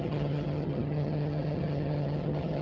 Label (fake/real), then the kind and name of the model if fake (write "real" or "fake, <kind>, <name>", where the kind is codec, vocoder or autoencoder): fake, vocoder, HiFi-GAN